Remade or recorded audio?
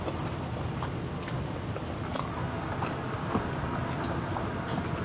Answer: recorded